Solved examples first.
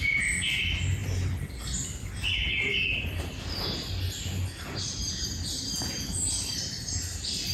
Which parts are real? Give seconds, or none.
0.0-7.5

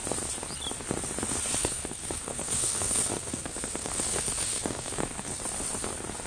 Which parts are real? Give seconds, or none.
0.0-1.6; 5.4-6.3